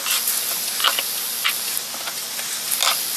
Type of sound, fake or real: real